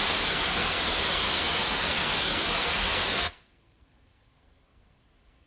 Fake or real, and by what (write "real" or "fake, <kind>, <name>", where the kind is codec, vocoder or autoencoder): fake, codec, SNAC